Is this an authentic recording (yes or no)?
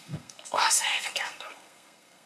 no